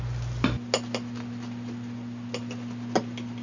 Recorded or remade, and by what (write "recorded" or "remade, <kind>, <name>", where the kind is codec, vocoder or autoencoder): recorded